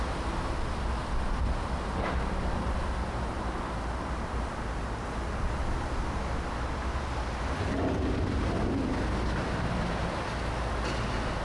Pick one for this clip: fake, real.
real